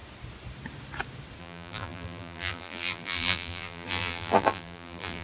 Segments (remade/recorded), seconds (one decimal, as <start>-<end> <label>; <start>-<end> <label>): 0.0-1.4 recorded; 1.4-5.2 remade